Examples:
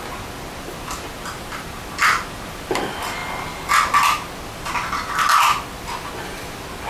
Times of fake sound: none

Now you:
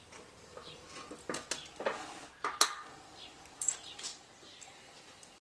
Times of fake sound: none

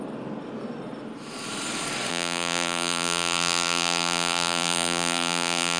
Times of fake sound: 2.1-5.8

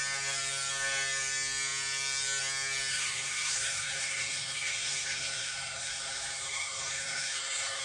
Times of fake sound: 2.9-7.8

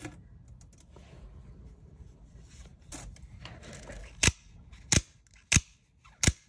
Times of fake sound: none